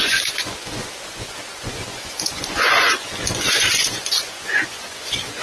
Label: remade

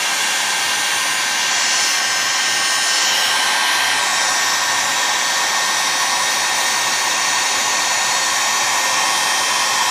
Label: recorded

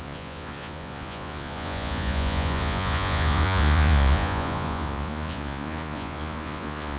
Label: remade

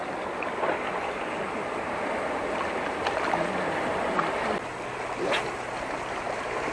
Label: recorded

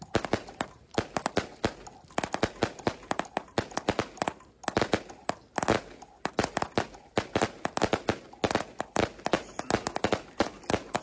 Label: recorded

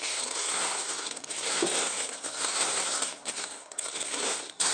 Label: remade